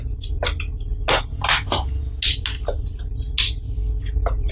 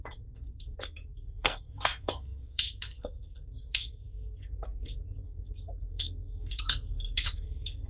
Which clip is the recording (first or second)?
first